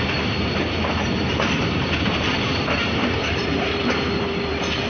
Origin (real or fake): fake